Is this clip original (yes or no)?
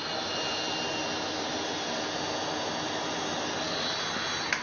yes